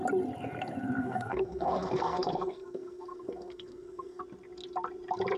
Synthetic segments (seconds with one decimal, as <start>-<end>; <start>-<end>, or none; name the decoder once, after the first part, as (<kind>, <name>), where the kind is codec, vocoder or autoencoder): 1.0-4.2 (codec, SNAC)

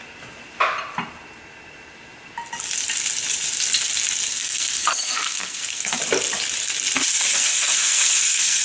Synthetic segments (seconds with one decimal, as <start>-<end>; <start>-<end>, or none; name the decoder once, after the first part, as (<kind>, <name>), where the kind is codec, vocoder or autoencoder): 4.3-6.0 (codec, SNAC); 7.3-8.6

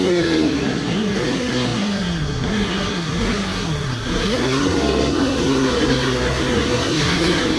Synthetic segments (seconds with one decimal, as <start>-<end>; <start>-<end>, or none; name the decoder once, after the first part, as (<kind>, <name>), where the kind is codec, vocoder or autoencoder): 0.0-7.6 (codec, SNAC)